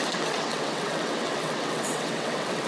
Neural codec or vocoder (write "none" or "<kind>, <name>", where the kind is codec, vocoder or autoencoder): vocoder, WaveNeXt